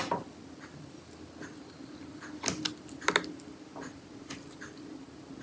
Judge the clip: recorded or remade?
recorded